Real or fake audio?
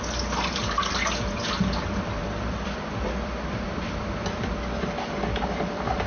fake